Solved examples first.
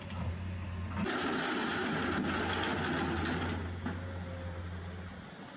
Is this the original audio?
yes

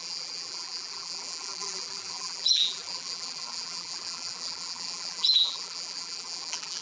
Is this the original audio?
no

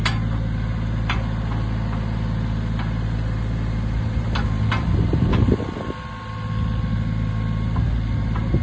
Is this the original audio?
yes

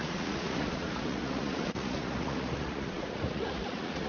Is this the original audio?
no